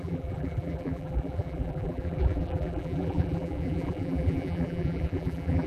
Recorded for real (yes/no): no